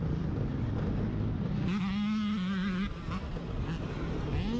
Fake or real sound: real